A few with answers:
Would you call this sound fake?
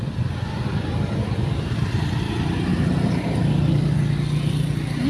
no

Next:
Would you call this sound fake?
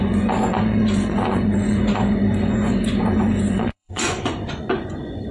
yes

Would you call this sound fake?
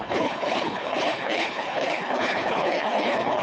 yes